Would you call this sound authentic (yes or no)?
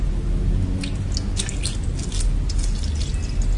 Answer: yes